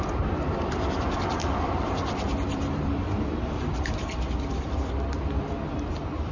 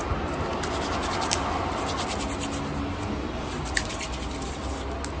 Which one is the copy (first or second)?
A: first